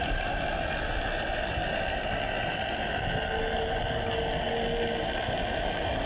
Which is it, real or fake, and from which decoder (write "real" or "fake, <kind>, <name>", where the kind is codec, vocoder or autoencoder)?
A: real